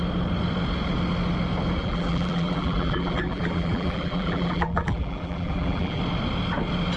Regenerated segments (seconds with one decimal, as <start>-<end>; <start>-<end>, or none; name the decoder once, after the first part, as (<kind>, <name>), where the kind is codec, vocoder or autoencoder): 1.8-6.0 (vocoder, BigVGAN v2)